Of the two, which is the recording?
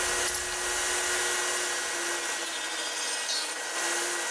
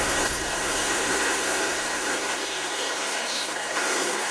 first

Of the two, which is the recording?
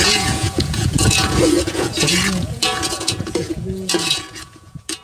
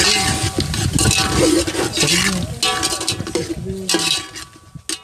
second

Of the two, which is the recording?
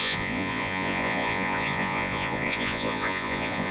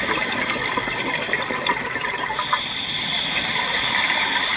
second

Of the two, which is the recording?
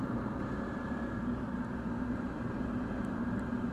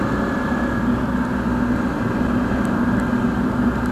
second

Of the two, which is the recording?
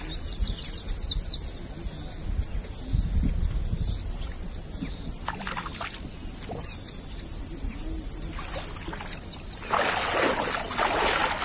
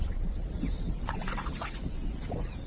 first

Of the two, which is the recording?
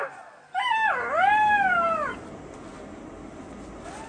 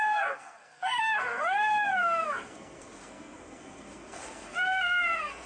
first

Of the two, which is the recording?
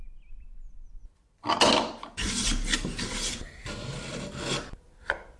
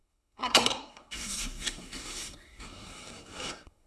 first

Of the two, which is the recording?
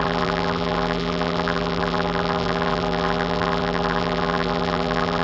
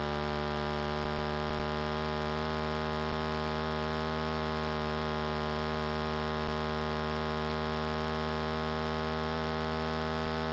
second